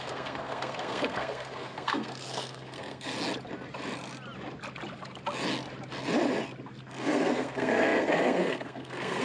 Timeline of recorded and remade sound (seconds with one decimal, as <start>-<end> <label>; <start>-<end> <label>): 0.0-3.1 remade; 3.1-6.8 recorded; 6.8-9.2 remade

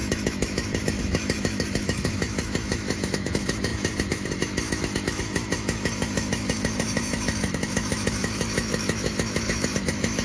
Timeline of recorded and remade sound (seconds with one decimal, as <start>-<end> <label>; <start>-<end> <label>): 0.0-10.2 remade

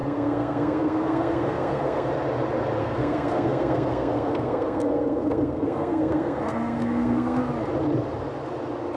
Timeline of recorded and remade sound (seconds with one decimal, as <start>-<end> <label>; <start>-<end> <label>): 0.0-2.1 remade; 2.1-2.8 recorded; 2.8-7.4 remade; 7.4-9.0 recorded

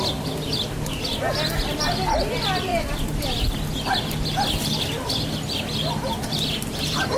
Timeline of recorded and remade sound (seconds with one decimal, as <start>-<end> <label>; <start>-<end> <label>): 0.0-7.2 recorded